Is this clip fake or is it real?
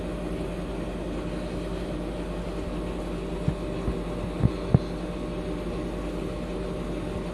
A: real